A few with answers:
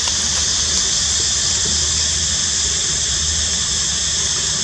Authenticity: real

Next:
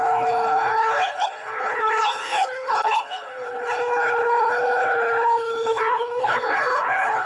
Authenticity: fake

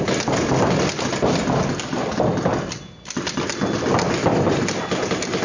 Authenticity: real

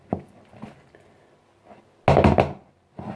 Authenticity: real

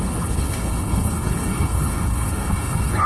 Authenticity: fake